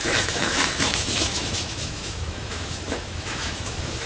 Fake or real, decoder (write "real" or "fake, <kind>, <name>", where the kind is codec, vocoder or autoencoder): fake, autoencoder, DAC-VAE